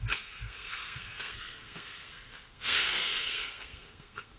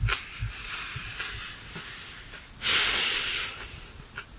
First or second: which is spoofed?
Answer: first